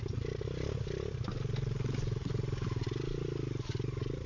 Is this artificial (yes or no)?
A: no